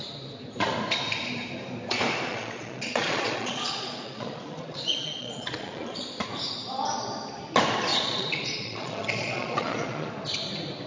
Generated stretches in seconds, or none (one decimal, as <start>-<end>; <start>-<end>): 2.3-6.2; 7.9-10.1